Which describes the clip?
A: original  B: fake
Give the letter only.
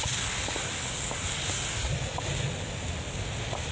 A